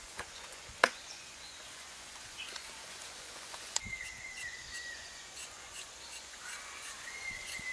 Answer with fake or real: fake